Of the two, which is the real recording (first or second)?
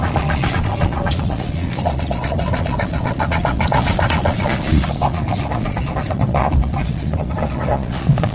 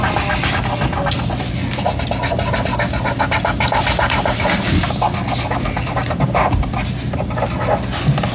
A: second